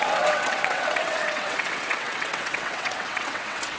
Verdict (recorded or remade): remade